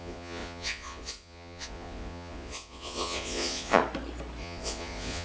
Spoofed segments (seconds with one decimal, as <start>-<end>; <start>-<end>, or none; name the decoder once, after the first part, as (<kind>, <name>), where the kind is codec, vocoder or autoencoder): 0.0-3.8 (vocoder, Vocos); 4.4-5.2